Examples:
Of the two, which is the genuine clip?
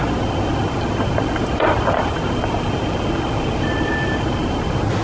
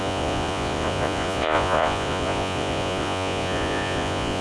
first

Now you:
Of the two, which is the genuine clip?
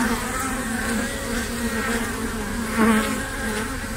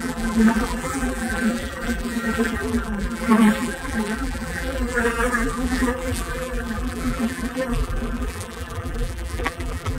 first